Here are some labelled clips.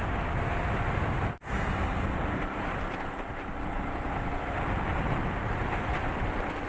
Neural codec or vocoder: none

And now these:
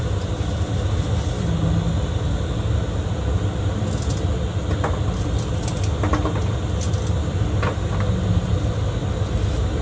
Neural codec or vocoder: none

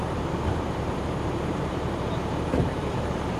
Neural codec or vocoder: vocoder, BigVGAN v2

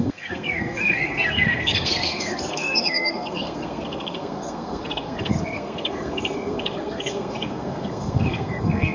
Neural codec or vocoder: codec, SNAC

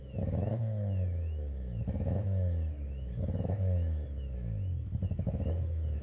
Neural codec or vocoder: autoencoder, DAC-VAE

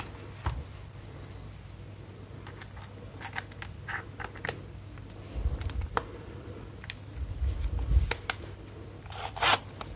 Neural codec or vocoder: none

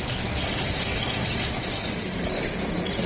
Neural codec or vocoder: none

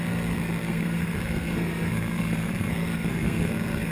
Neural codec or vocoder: codec, SNAC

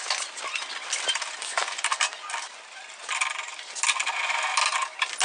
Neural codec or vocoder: none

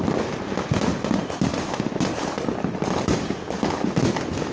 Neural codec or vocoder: none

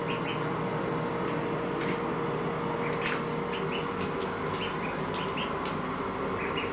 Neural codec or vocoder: none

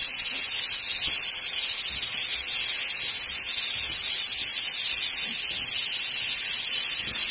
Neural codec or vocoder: none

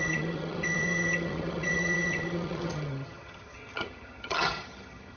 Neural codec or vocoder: vocoder, HiFi-GAN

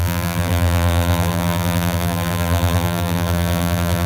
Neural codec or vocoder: vocoder, BigVGAN v2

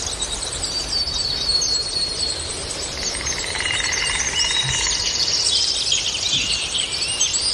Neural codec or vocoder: vocoder, BigVGAN v2